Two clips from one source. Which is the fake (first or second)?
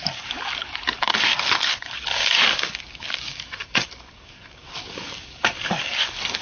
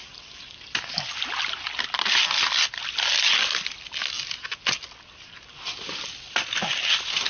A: first